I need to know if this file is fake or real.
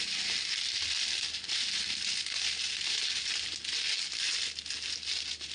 real